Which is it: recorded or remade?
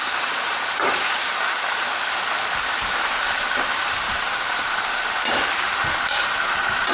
remade